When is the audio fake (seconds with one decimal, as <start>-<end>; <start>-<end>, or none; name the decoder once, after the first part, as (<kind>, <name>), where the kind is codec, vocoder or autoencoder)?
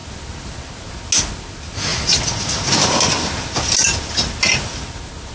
none